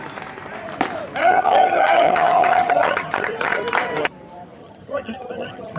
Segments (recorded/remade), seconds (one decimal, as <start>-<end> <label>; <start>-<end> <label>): 0.0-1.2 recorded; 1.2-3.6 remade; 3.6-4.6 recorded; 4.6-5.8 remade